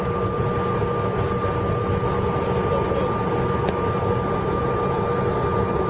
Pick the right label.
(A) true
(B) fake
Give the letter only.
A